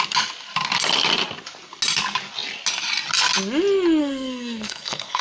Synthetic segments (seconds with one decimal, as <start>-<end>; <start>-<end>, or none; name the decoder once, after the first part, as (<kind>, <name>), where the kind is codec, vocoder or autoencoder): 4.0-5.2 (codec, SNAC)